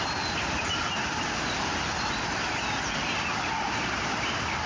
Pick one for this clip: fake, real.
fake